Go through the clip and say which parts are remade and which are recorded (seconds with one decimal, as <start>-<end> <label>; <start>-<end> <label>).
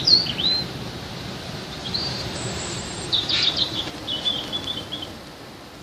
0.0-1.8 recorded; 1.8-3.9 remade; 3.9-5.8 recorded